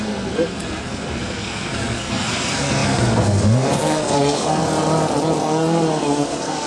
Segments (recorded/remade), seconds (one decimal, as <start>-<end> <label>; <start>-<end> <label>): 0.0-4.6 remade; 4.6-5.4 recorded; 5.4-6.7 remade